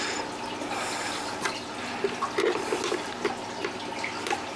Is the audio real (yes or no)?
yes